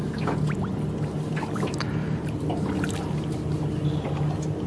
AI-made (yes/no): no